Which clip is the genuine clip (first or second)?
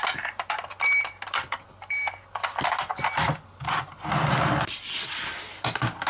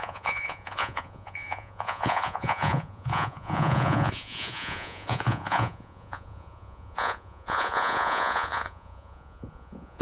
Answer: first